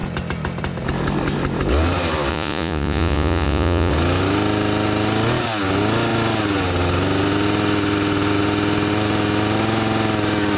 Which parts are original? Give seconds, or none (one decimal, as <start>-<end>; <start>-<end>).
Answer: 0.0-2.3; 3.9-10.6